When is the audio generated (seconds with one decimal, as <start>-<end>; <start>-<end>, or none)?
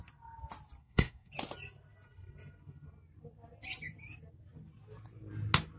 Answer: 0.8-1.3